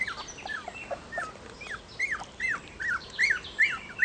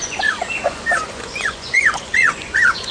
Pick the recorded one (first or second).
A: first